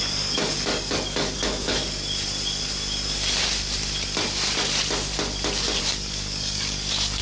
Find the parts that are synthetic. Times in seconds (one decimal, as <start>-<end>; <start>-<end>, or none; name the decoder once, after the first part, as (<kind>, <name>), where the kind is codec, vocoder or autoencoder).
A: 0.0-1.8 (codec, DAC); 5.8-7.2

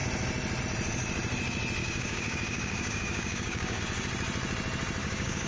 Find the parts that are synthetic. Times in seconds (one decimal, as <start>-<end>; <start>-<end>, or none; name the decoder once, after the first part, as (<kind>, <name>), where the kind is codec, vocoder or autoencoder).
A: 1.8-3.8 (codec, DAC); 5.0-5.5

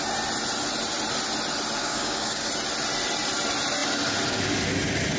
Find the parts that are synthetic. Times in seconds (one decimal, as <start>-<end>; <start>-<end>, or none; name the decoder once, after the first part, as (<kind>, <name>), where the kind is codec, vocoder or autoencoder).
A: 1.8-2.5 (codec, DAC)